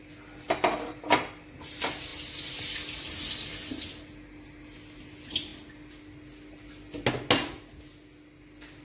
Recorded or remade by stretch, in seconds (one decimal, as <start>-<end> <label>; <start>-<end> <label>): 0.0-8.8 recorded